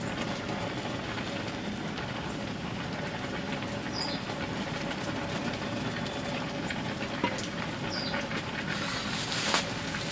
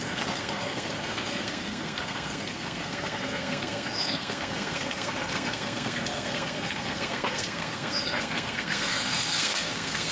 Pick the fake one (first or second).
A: second